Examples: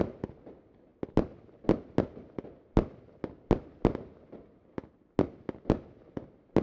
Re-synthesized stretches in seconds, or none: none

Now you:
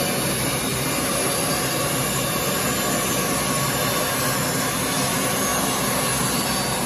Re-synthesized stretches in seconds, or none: none

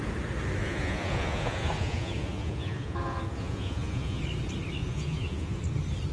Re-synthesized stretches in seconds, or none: 0.6-4.2 (vocoder, Vocos); 4.8-5.6

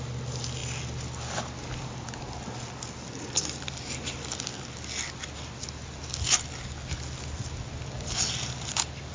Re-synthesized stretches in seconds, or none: none